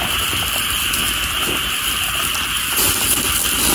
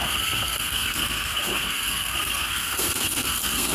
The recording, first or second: first